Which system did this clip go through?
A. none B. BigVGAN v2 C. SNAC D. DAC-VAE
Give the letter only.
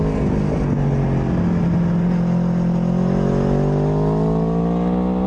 A